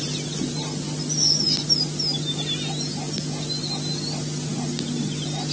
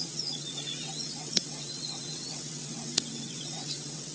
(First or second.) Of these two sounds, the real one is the first